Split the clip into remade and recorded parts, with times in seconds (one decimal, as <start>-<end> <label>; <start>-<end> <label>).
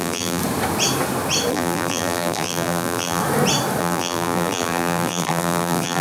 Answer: 0.0-0.4 remade; 0.4-1.5 recorded; 1.5-3.2 remade; 3.2-3.8 recorded; 3.8-6.0 remade